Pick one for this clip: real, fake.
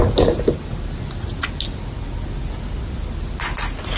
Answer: real